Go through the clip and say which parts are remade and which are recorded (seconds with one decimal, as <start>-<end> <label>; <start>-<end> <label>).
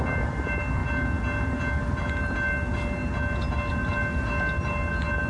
0.0-5.3 recorded